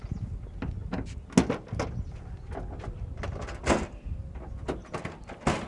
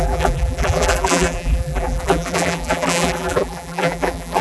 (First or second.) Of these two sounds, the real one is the first